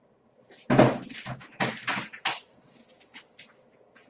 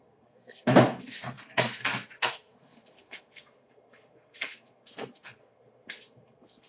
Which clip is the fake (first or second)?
second